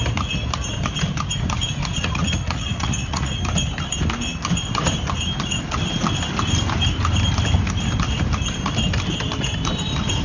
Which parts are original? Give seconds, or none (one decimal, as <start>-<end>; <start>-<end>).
0.0-2.0; 3.3-10.2